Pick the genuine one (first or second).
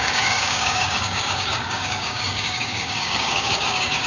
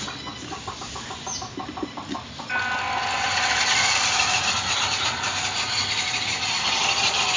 second